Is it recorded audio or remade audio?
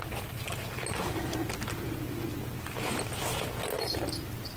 recorded